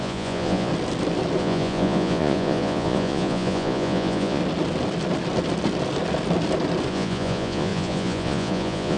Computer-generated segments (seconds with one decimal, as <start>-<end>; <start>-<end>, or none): 0.0-0.7; 1.4-4.4; 6.9-9.0